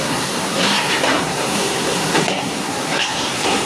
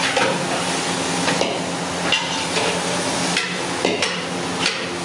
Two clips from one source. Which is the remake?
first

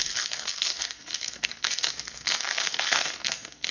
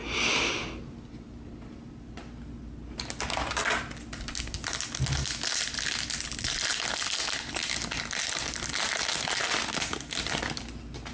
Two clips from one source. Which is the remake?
first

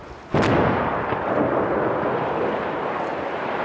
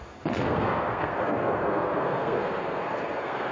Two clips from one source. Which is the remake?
second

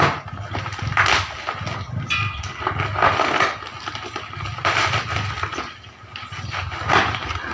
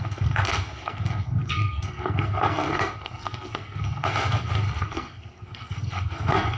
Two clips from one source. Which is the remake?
second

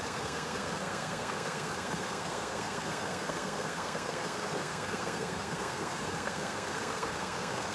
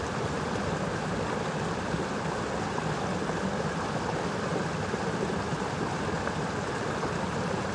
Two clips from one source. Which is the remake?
first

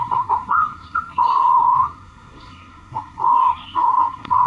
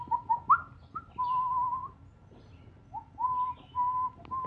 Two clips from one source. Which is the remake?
first